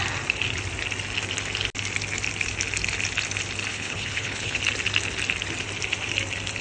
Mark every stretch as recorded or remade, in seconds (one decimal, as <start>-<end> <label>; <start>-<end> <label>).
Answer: 0.0-3.7 recorded; 3.7-4.6 remade; 4.6-6.6 recorded